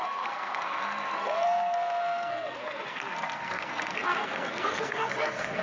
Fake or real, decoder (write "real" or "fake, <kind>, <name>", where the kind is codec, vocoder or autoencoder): fake, codec, SNAC